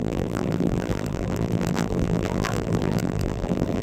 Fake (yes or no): yes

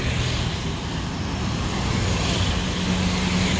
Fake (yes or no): no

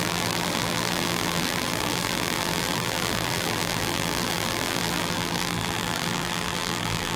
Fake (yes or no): yes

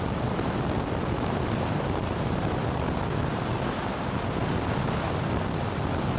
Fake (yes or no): no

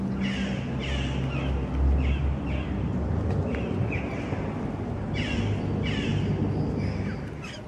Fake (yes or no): no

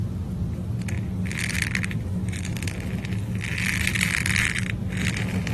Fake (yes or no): no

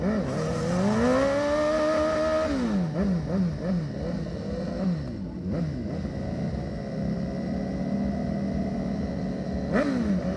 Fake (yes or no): no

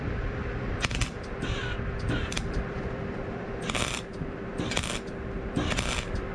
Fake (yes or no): yes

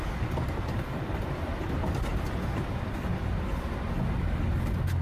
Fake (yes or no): no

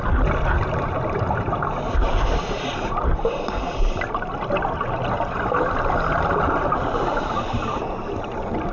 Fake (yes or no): no